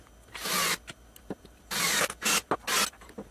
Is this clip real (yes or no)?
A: yes